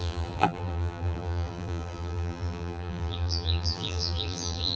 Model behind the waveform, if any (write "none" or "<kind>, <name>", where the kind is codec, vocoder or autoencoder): vocoder, BigVGAN v2